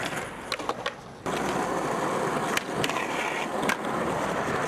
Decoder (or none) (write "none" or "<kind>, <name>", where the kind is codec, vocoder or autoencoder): none